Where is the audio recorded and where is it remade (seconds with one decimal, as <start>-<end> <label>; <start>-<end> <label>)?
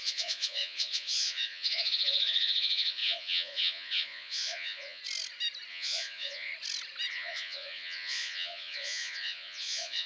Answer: 0.0-5.0 remade; 5.0-5.7 recorded; 5.7-6.5 remade; 6.5-7.1 recorded; 7.1-10.1 remade